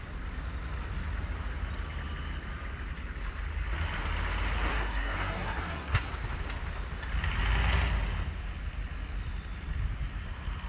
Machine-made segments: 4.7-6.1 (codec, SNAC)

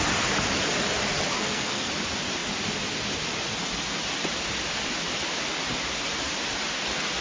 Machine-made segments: 1.3-1.9 (codec, SNAC)

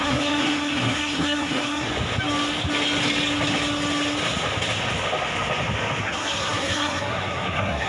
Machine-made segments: 0.0-1.9 (codec, SNAC); 6.0-7.9